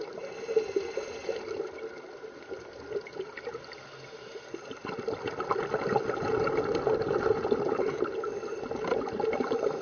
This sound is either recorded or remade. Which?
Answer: recorded